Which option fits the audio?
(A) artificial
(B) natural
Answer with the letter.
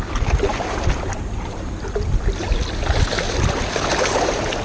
B